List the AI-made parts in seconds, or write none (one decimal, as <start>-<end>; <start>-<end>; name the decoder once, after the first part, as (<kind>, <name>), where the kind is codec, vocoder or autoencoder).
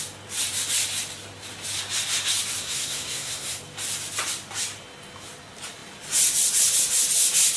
2.6-3.6 (codec, SNAC)